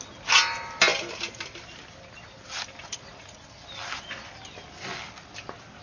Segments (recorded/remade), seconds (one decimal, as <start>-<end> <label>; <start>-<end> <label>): 0.0-5.8 recorded